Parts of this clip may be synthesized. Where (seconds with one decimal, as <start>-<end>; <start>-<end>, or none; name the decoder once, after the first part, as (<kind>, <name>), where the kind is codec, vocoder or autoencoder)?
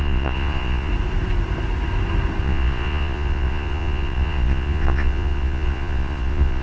0.0-0.9 (vocoder, Vocos); 2.4-6.6